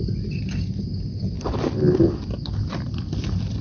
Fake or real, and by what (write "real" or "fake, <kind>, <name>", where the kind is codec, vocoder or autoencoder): real